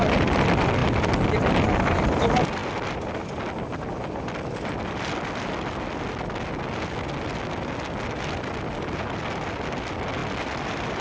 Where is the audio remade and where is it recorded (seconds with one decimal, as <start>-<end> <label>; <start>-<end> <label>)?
0.0-11.0 recorded